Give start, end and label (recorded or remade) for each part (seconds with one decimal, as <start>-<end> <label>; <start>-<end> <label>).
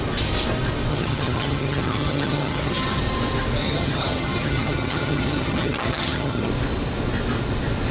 0.0-0.9 recorded; 0.9-3.0 remade; 3.0-3.6 recorded; 3.6-6.5 remade; 6.5-7.9 recorded